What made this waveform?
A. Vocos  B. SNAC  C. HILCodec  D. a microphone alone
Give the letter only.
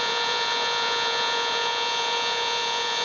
A